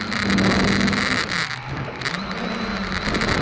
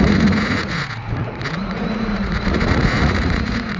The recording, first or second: first